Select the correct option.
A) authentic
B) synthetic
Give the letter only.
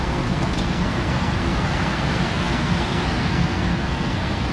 B